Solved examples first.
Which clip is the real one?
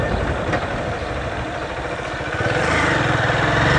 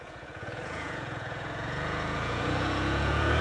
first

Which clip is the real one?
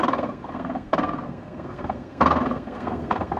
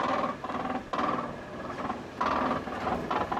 second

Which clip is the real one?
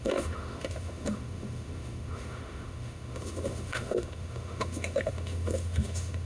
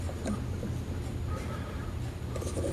second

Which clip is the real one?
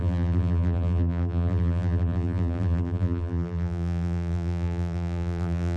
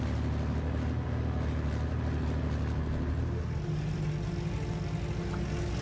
second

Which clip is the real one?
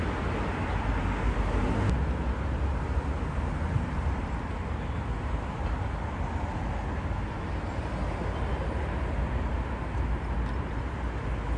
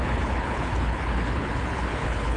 first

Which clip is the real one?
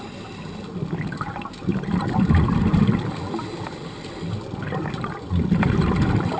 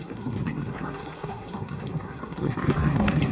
first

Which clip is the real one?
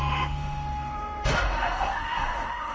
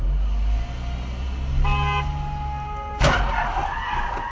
second